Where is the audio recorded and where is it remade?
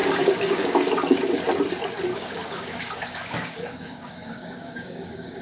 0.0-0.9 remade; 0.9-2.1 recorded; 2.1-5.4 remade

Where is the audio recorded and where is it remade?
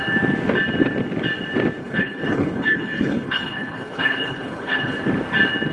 0.0-1.8 recorded; 1.8-5.0 remade; 5.0-5.7 recorded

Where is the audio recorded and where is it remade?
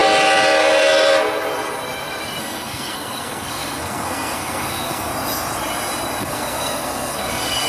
0.0-2.4 recorded; 2.4-5.1 remade; 5.1-6.2 recorded; 6.2-7.7 remade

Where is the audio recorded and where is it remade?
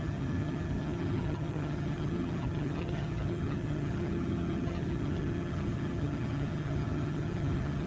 0.0-7.9 remade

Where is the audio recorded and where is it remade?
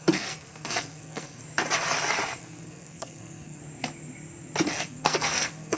0.0-1.4 remade; 1.4-2.4 recorded; 2.4-3.6 remade; 3.6-4.7 recorded; 4.7-5.8 remade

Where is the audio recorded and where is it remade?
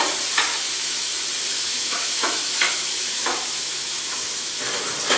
0.0-0.5 recorded; 0.5-1.1 remade; 1.1-1.5 recorded; 1.5-4.6 remade; 4.6-5.2 recorded